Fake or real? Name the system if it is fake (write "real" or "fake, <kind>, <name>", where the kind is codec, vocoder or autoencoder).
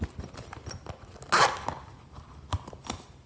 real